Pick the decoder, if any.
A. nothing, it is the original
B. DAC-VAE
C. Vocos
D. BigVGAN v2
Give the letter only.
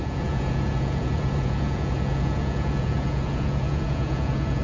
C